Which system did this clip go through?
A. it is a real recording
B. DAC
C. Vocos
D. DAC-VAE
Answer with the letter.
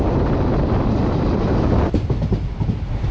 A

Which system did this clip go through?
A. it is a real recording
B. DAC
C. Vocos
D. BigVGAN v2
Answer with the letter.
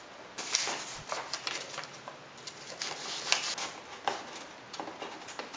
A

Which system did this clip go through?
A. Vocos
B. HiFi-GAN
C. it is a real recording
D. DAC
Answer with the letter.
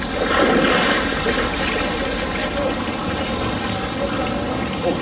C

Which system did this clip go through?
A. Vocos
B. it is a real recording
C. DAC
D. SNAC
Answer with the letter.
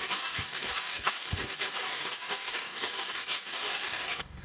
C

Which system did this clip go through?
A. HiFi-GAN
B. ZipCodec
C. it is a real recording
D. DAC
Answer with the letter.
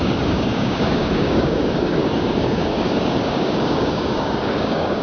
D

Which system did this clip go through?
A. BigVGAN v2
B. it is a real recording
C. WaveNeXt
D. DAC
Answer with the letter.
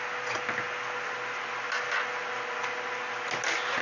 B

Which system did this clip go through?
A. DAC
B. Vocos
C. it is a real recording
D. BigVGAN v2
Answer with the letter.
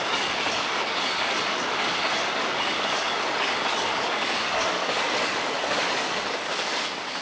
A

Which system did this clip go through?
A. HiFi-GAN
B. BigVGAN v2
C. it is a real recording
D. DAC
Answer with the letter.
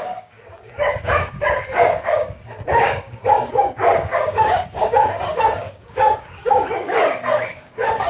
D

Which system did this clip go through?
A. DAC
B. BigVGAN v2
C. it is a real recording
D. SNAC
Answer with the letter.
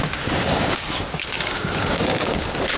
A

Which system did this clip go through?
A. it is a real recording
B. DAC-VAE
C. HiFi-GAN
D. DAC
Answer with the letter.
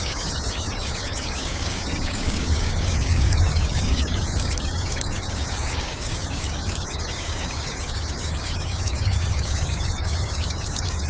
D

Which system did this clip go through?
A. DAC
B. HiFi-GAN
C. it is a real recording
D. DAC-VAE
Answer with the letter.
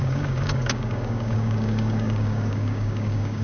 A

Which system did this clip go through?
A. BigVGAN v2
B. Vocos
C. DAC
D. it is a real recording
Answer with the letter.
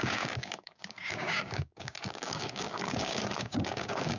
C